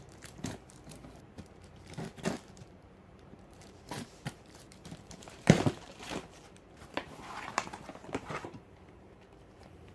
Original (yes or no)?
no